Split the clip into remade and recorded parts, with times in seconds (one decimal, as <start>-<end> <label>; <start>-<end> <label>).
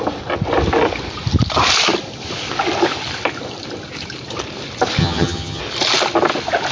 0.0-5.0 recorded; 5.0-5.6 remade; 5.6-6.7 recorded